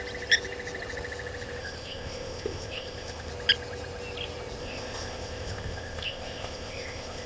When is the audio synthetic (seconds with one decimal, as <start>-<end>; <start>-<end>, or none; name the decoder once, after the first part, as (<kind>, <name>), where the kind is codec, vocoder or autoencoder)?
1.6-3.3 (codec, ZipCodec); 4.6-7.3